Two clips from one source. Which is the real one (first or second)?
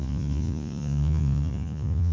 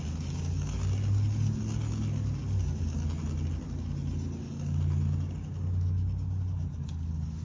second